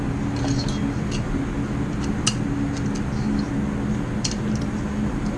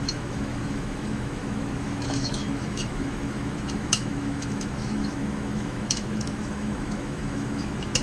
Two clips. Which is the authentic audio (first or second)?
first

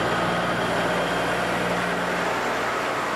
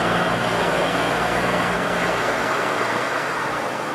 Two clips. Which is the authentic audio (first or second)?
first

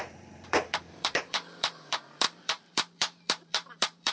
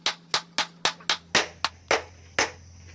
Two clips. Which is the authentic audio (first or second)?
second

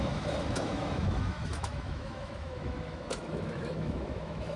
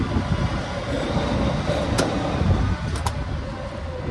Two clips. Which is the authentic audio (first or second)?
second